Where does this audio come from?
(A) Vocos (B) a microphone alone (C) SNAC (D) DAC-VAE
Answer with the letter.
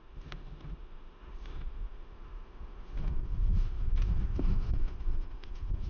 D